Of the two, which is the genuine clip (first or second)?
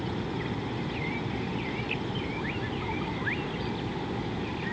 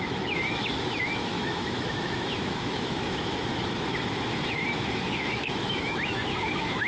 first